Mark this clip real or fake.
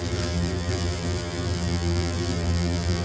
fake